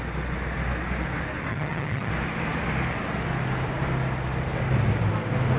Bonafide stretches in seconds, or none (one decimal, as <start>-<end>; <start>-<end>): 0.0-1.5; 2.1-5.6